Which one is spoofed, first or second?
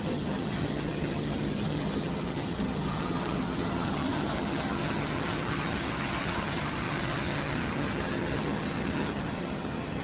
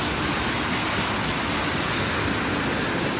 first